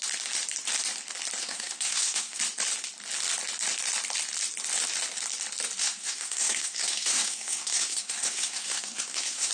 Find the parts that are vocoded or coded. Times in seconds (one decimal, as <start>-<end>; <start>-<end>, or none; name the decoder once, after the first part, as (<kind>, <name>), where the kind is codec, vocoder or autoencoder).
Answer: 1.4-2.4 (codec, SNAC); 5.8-9.5